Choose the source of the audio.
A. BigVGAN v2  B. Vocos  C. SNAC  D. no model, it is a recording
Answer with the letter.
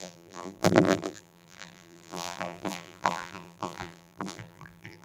A